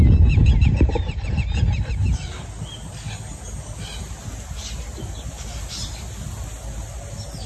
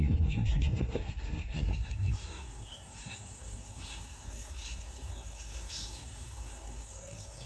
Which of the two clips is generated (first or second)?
second